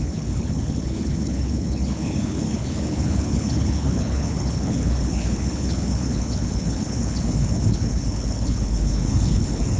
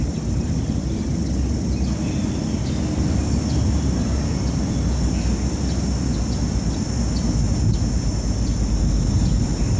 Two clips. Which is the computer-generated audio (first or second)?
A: first